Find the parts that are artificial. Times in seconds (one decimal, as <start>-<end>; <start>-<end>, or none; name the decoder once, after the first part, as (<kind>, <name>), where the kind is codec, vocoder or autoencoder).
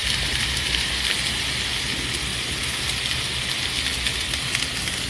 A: 0.0-0.9 (vocoder, BigVGAN v2); 2.3-2.8